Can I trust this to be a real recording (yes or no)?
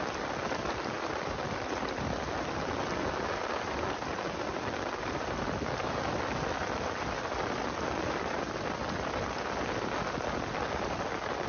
yes